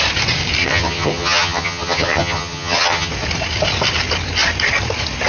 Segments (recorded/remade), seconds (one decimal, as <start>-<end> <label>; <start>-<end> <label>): 0.0-0.6 recorded; 0.6-3.1 remade; 3.1-5.3 recorded